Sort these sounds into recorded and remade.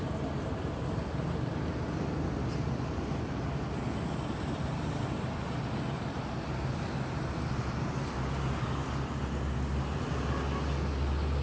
recorded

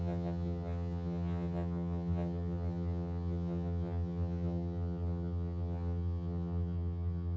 remade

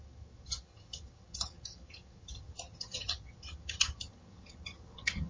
remade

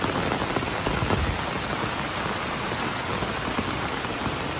recorded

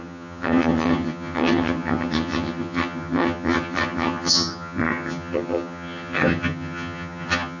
remade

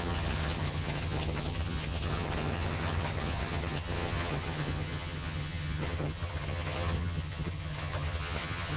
remade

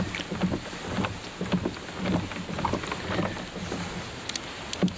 recorded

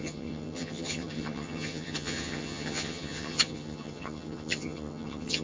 remade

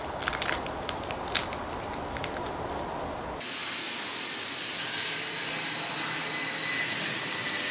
recorded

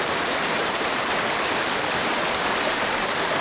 recorded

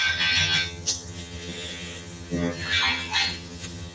remade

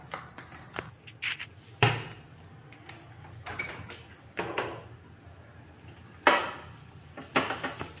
recorded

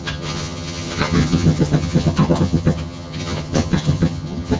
remade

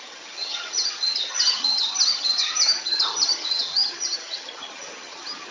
remade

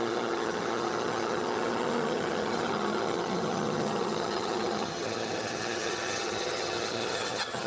remade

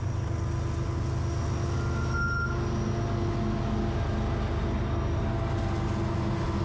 recorded